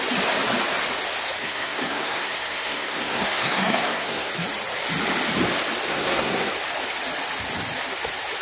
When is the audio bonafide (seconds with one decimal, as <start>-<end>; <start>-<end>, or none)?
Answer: 0.0-1.4; 4.3-5.9; 6.5-8.4